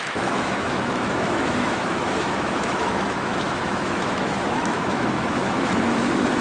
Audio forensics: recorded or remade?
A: remade